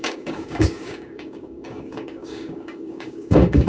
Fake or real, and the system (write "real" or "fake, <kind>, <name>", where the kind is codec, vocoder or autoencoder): fake, codec, DAC